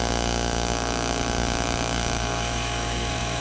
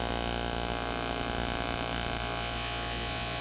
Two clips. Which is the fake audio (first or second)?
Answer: first